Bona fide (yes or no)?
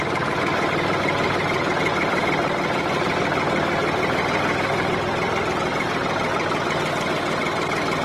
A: yes